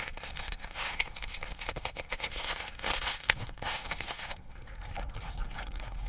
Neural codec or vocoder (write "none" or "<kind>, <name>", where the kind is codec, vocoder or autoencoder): codec, SNAC